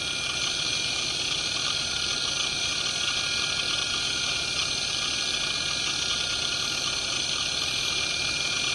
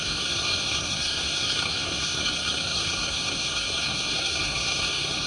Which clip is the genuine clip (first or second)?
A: first